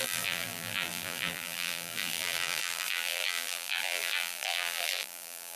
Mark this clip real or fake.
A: fake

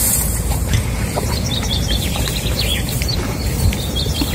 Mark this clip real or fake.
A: fake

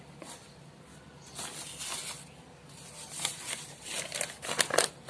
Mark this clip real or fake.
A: real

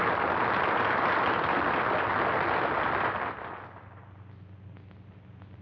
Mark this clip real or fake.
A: real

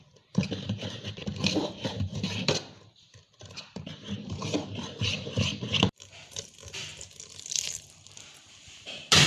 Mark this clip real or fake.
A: fake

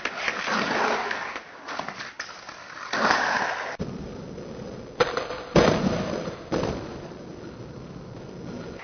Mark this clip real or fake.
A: real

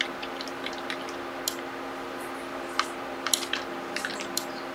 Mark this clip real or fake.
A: fake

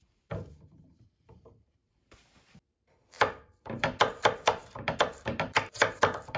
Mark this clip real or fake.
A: fake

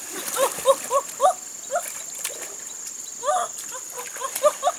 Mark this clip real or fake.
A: real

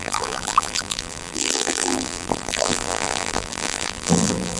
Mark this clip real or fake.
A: fake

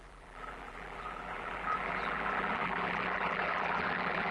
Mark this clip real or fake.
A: fake